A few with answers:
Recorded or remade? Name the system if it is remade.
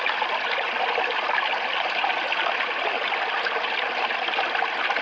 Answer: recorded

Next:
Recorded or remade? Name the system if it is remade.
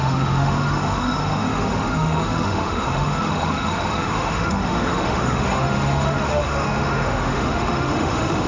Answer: remade, autoencoder, DAC-VAE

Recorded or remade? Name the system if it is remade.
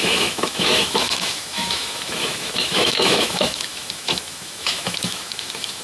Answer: remade, autoencoder, DAC-VAE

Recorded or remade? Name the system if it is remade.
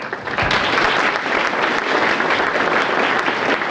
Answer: recorded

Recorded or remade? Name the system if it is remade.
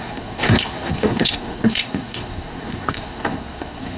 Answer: remade, codec, SNAC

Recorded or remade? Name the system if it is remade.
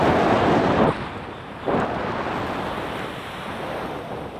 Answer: recorded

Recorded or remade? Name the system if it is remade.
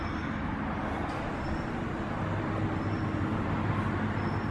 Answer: recorded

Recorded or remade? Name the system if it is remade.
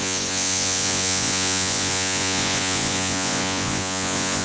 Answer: remade, vocoder, Vocos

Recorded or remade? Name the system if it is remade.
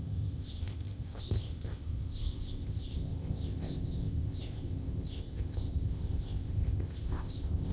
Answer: remade, codec, ZipCodec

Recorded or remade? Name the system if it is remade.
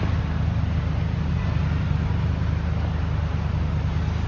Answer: recorded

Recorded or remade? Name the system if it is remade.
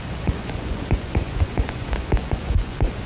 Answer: remade, vocoder, Vocos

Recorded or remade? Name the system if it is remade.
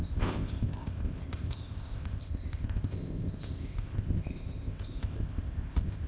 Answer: remade, codec, ZipCodec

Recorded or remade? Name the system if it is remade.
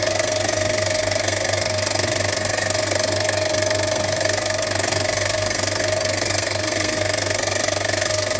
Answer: remade, codec, SNAC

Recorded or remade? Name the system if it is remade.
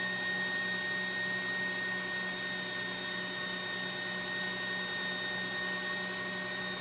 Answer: recorded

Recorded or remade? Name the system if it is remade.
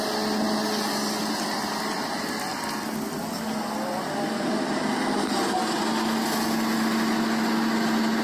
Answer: recorded